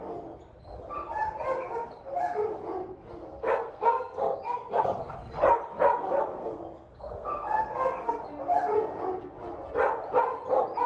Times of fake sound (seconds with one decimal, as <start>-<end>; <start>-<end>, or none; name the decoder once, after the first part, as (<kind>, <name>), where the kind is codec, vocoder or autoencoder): 3.2-5.1 (codec, SNAC); 6.3-8.2